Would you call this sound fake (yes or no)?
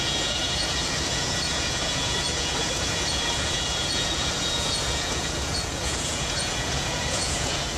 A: yes